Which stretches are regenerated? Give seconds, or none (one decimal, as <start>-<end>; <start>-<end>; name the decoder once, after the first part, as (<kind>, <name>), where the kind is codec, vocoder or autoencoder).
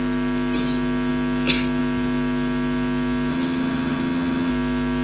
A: 3.3-4.5 (vocoder, HiFi-GAN)